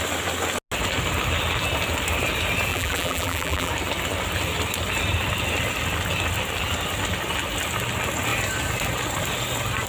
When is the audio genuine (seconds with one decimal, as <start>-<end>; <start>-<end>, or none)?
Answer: 0.0-2.7; 3.7-9.9